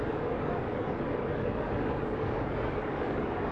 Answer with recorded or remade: remade